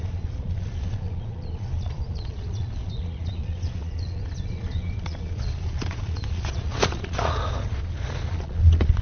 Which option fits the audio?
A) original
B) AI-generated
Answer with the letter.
B